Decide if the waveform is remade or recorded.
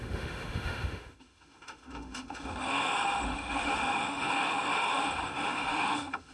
remade